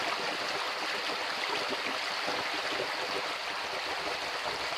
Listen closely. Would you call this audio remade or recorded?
recorded